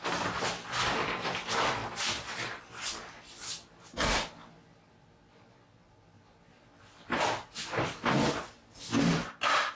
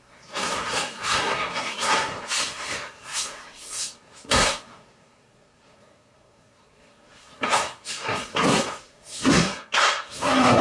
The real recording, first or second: first